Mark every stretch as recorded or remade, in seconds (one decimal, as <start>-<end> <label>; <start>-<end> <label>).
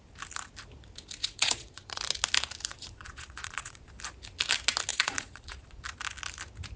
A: 0.0-1.2 recorded; 1.2-2.0 remade; 2.0-2.7 recorded; 2.7-3.9 remade; 3.9-4.9 recorded; 4.9-5.8 remade; 5.8-6.8 recorded